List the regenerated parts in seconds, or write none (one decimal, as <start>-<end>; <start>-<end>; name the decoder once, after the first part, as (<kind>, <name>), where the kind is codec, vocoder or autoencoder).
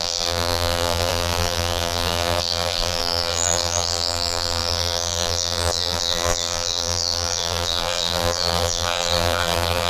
0.0-9.9 (vocoder, BigVGAN v2)